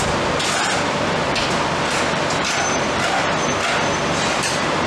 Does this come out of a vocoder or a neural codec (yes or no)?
yes